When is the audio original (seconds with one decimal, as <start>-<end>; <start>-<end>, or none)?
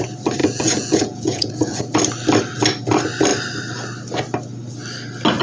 0.0-0.4; 1.8-5.4